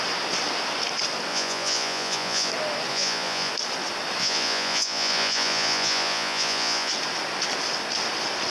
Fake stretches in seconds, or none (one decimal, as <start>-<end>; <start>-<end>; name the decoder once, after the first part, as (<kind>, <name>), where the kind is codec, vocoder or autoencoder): 1.3-2.5 (vocoder, Vocos); 2.9-3.5; 4.2-6.9